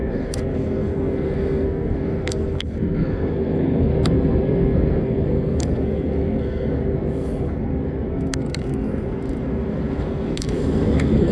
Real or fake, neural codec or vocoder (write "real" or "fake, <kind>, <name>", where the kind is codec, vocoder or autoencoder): fake, codec, SNAC